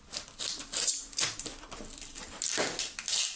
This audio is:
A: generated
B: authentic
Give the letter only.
B